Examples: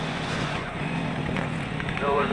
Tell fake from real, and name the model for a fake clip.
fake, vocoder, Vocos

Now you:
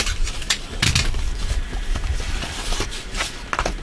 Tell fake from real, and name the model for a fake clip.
real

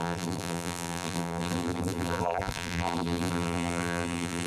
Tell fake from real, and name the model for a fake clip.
fake, vocoder, BigVGAN v2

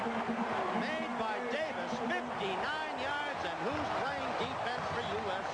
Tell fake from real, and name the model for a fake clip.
real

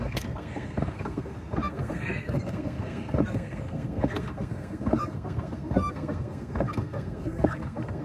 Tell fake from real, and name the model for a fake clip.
fake, codec, SNAC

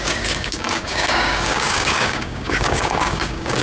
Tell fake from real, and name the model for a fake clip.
fake, codec, DAC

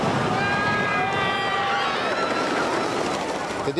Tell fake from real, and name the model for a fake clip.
real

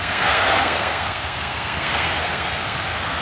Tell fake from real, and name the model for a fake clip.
fake, codec, SNAC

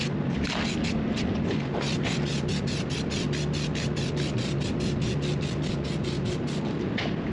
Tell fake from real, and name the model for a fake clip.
real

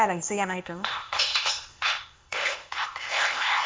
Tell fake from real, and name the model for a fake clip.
fake, codec, ZipCodec